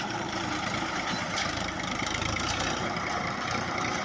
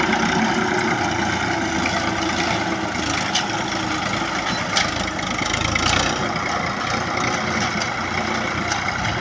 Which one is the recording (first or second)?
second